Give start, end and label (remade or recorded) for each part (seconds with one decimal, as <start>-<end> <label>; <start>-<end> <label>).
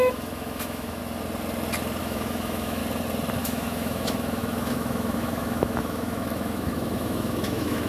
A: 0.0-1.0 remade; 1.0-2.0 recorded; 2.0-2.8 remade; 2.8-3.4 recorded; 3.4-7.9 remade